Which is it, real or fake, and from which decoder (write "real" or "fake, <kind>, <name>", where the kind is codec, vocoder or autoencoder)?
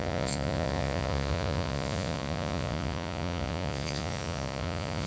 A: fake, vocoder, Vocos